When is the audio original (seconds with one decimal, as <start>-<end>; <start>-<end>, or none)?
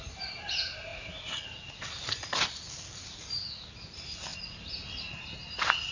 0.0-5.9